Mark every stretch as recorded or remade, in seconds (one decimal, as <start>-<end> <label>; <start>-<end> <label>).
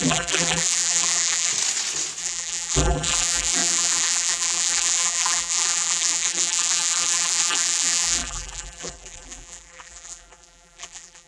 0.0-1.5 remade; 1.5-2.2 recorded; 2.2-11.3 remade